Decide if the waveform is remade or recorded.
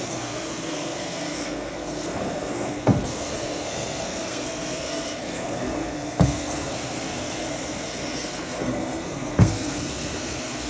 remade